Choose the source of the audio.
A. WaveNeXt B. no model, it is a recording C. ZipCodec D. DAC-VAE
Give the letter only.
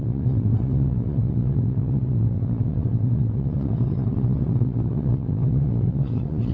A